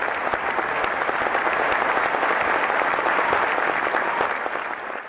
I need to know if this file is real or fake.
real